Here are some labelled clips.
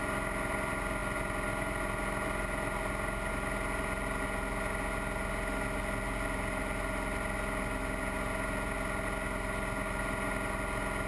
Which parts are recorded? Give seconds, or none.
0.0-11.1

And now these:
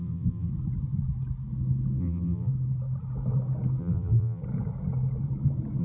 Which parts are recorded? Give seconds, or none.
0.5-2.0; 2.5-3.8; 4.4-5.8

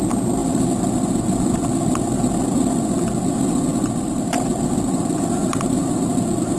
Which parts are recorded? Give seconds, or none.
0.0-6.6

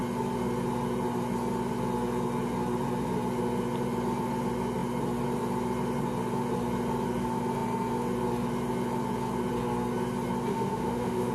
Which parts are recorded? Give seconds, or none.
0.0-10.5

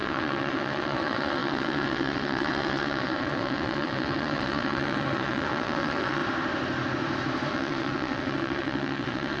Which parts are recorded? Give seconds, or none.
6.2-7.5